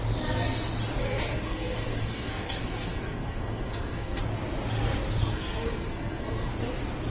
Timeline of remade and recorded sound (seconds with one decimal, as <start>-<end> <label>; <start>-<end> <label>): 0.0-1.0 recorded; 1.0-4.2 remade; 4.2-5.3 recorded; 5.3-6.5 remade; 6.5-7.1 recorded